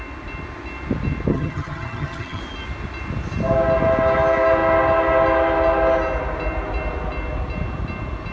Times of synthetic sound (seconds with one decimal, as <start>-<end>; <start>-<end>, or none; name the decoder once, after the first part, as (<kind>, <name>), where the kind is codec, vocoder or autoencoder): 1.3-2.4 (vocoder, HiFi-GAN)